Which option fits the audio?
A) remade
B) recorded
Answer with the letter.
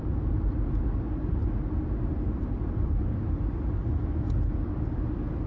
B